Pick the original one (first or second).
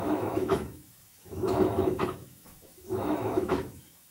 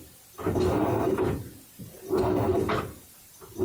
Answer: second